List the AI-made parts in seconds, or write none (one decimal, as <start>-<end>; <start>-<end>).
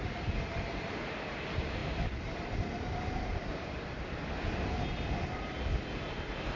none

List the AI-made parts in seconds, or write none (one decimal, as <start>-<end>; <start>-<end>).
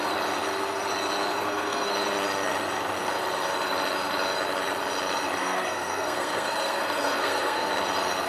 1.3-1.9; 5.4-7.7